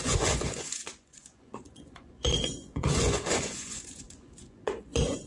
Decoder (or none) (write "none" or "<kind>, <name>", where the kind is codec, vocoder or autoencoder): vocoder, Vocos